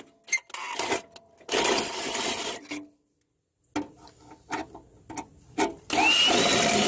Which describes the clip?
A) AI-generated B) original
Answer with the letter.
B